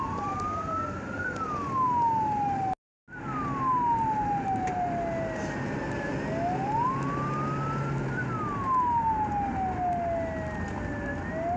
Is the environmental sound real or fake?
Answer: real